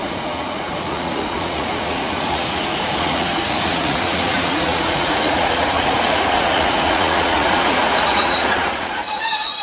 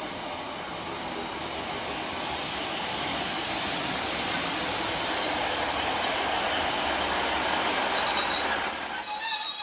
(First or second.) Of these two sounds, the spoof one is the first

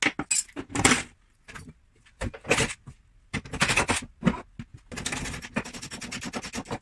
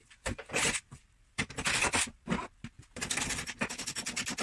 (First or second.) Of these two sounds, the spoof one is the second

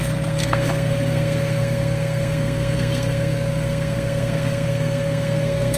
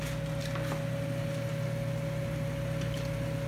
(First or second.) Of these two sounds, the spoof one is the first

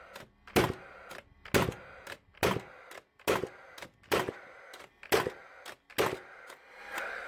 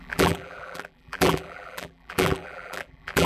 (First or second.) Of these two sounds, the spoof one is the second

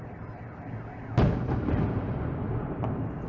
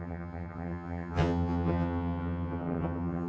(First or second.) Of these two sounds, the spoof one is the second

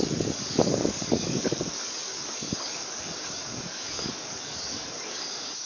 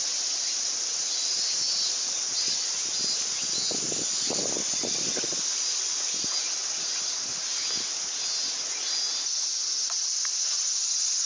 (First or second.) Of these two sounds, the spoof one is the first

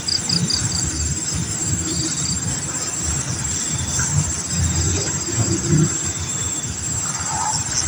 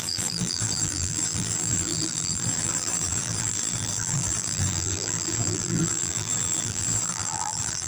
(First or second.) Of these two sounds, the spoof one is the second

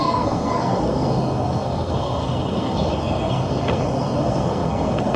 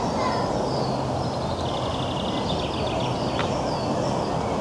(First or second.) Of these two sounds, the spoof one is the first